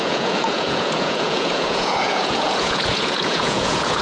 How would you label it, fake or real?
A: fake